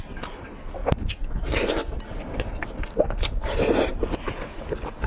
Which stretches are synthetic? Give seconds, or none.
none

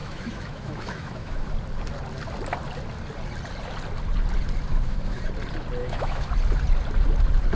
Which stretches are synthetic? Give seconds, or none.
0.0-1.5 (autoencoder, DAC-VAE); 4.7-5.2; 5.8-6.3

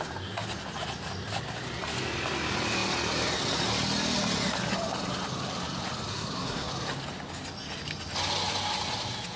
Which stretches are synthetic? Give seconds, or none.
6.1-6.7 (codec, SNAC)

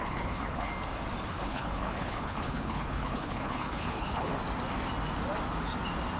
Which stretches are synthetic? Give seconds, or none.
0.0-0.7 (codec, HILCodec); 1.3-4.3

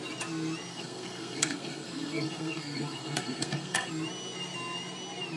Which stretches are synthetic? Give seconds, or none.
0.7-3.9 (codec, SNAC)

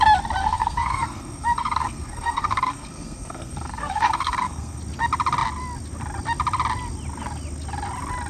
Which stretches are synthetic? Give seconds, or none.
0.4-4.8 (codec, SNAC)

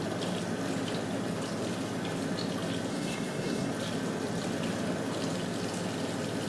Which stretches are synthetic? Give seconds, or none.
2.9-3.7 (codec, SNAC)

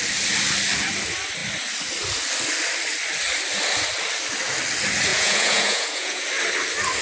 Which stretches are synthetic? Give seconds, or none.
5.1-6.2 (vocoder, Vocos)